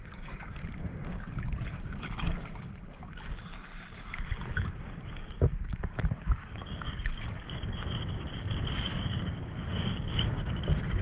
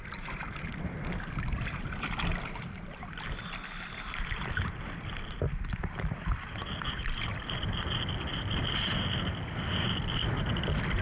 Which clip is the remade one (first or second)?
first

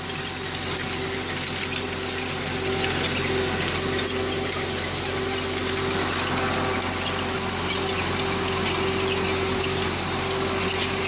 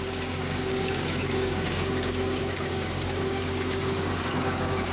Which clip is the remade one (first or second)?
second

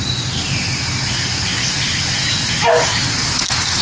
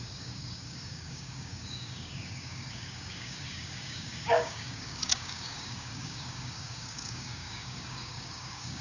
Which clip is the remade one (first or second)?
second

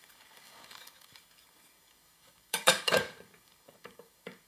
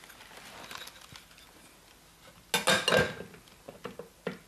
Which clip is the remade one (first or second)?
first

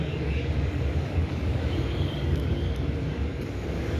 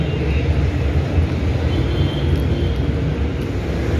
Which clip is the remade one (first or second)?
first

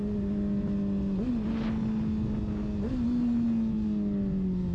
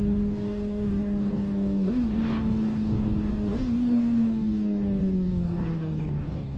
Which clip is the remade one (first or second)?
second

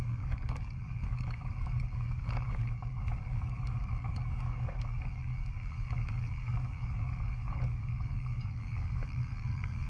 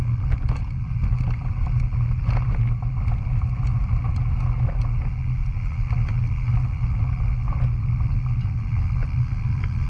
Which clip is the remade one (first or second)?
first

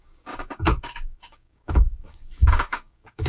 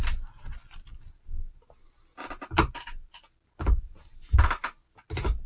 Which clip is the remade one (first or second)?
first